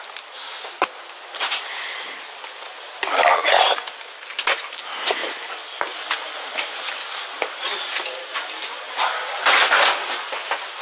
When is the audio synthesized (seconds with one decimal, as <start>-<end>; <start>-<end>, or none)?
none